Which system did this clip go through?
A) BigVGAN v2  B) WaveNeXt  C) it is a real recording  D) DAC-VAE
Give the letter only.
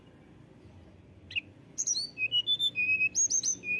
C